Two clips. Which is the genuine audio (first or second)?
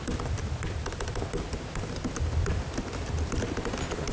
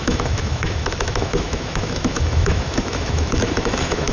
first